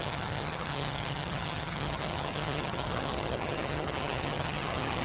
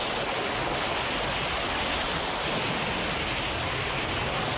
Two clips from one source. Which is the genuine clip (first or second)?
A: second